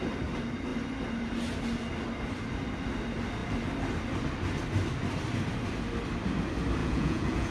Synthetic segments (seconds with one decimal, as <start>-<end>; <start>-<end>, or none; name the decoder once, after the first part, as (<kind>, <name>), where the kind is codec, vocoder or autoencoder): 6.8-7.5 (vocoder, Vocos)